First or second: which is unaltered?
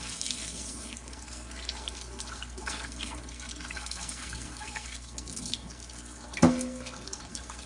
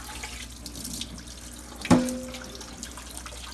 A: second